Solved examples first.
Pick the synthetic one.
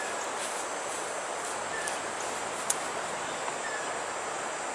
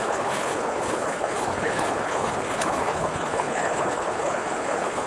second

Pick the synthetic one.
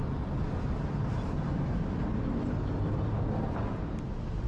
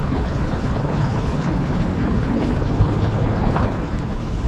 second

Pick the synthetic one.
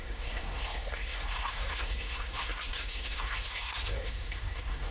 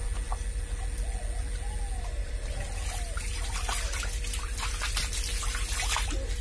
first